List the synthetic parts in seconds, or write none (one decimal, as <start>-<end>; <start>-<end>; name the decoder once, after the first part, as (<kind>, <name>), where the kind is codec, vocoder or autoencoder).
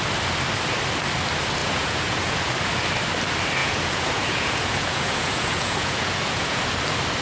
1.6-2.4 (vocoder, Vocos); 3.6-6.6